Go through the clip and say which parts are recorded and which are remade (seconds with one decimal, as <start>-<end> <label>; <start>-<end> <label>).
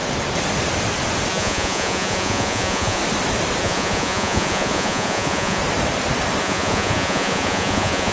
0.0-1.3 recorded; 1.3-3.0 remade; 3.0-3.6 recorded; 3.6-5.6 remade; 5.6-6.4 recorded; 6.4-8.1 remade